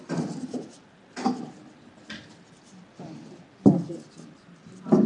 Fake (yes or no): no